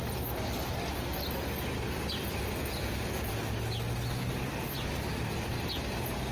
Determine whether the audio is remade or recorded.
recorded